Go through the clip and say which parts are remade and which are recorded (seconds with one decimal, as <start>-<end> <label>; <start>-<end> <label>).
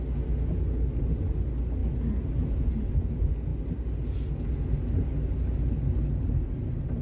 0.0-7.0 recorded